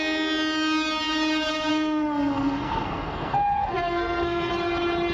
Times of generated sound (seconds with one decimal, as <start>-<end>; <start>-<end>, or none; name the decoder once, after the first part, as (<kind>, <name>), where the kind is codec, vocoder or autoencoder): 1.7-4.5 (codec, SNAC)